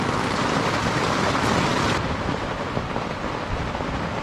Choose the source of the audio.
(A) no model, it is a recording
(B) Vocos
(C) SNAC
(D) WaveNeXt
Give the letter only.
A